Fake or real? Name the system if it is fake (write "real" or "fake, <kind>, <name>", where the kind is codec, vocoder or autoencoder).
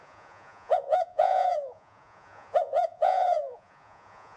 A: fake, vocoder, Vocos